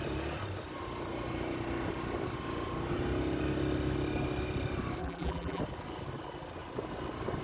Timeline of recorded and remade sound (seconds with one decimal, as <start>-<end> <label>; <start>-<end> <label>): 0.0-5.0 recorded; 5.0-5.6 remade; 5.6-7.4 recorded